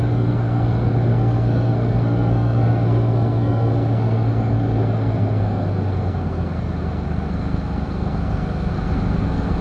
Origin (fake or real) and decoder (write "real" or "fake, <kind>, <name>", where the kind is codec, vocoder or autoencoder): fake, codec, SNAC